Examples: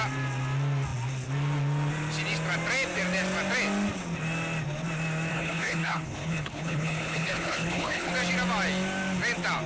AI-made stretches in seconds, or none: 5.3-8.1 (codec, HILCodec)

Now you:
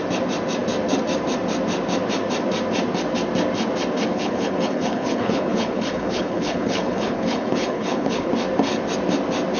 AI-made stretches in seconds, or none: 4.1-8.3 (codec, HILCodec)

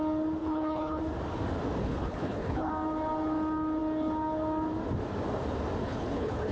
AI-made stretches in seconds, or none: 0.4-1.0 (codec, HILCodec); 1.8-2.7; 5.8-6.5

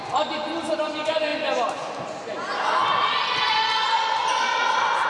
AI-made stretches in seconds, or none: none

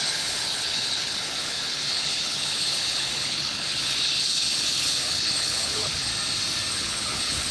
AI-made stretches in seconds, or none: 0.0-6.1 (codec, HILCodec); 6.7-7.5

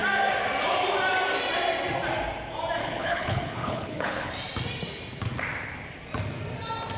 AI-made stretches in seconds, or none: 2.8-4.3 (codec, HILCodec)